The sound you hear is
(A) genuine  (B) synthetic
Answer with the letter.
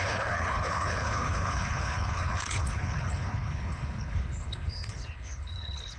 B